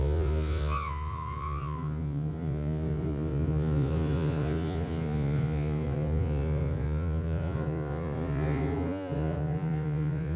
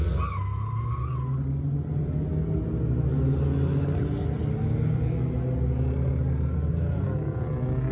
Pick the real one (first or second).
second